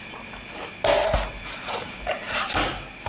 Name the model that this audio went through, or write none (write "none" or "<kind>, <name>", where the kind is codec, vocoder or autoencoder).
none